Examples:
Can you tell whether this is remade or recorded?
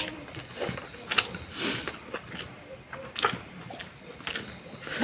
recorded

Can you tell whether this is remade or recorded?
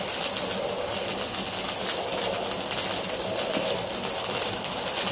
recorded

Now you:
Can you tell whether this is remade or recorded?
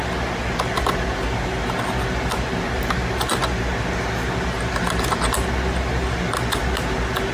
recorded